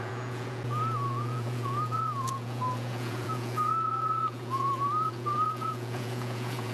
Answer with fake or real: fake